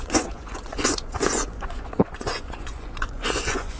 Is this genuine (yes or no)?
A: no